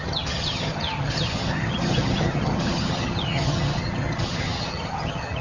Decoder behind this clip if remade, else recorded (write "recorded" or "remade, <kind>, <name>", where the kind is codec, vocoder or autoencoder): remade, vocoder, HiFi-GAN